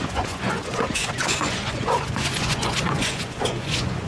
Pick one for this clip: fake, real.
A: fake